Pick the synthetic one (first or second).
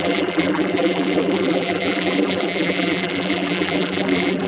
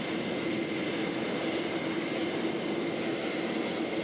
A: first